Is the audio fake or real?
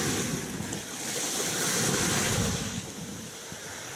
real